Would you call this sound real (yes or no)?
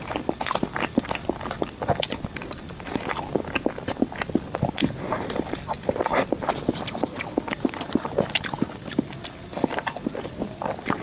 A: yes